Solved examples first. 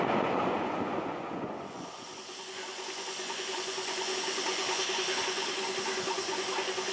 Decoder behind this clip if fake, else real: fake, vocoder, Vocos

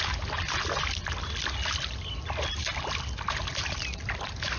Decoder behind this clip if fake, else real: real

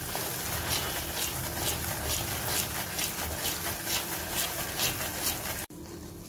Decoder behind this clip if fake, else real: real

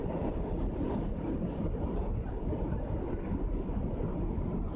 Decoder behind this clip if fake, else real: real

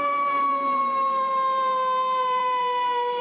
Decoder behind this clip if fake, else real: fake, vocoder, BigVGAN v2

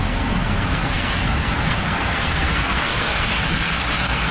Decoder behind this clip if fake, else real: fake, codec, SNAC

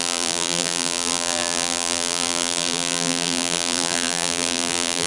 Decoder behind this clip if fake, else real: fake, vocoder, BigVGAN v2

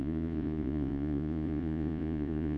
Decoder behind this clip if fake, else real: fake, vocoder, Vocos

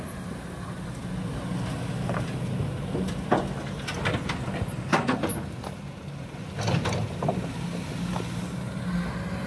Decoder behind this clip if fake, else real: real